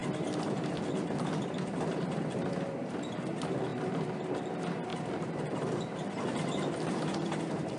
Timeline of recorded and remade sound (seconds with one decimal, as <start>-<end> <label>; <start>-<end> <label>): 0.0-3.7 remade; 3.7-4.4 recorded; 4.4-7.8 remade